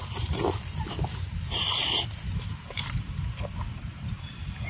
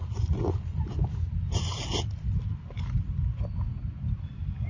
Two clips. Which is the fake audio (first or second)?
first